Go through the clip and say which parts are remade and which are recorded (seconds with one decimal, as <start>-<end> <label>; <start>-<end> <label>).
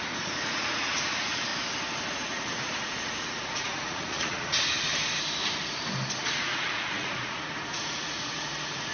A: 0.0-1.5 remade; 1.5-2.1 recorded; 2.1-4.9 remade; 4.9-6.2 recorded; 6.2-8.9 remade